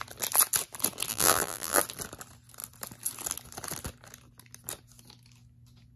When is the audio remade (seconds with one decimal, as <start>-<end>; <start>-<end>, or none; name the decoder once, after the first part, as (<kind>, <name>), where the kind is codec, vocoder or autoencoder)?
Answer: 1.1-1.8 (vocoder, BigVGAN v2)